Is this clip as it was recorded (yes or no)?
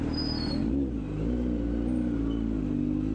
yes